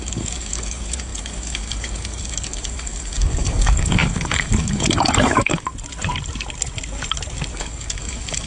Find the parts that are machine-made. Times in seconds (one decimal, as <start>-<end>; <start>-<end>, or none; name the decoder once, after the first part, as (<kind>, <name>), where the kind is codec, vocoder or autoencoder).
0.0-5.7 (codec, DAC); 7.5-8.5